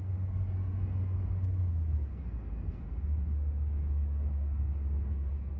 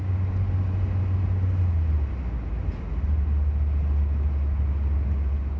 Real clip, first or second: second